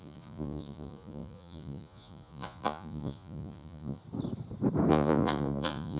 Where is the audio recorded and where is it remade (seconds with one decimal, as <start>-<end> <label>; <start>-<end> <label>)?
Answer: 0.0-4.0 remade; 4.0-4.9 recorded; 4.9-6.0 remade